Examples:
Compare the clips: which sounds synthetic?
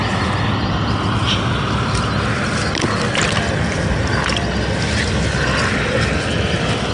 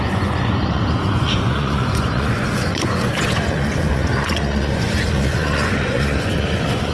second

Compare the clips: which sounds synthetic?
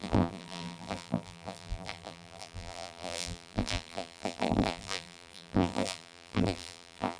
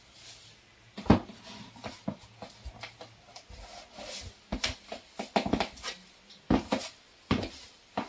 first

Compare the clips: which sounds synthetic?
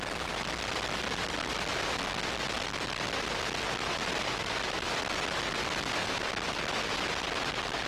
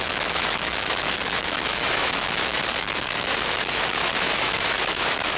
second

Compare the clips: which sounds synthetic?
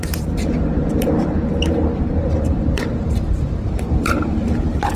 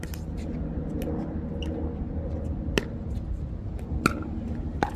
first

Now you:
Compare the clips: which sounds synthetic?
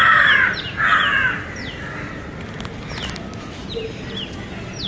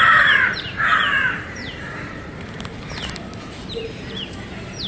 second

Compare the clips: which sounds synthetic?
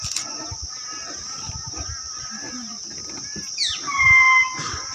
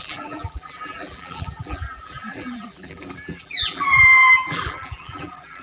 second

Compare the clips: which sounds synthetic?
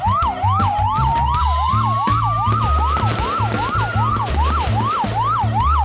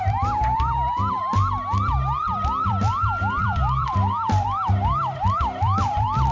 second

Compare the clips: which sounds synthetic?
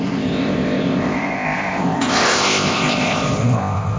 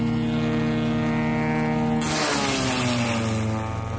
first